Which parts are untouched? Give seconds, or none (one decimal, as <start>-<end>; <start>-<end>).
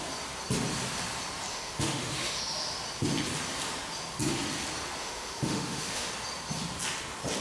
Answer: 0.0-1.5; 2.4-5.0; 6.1-7.4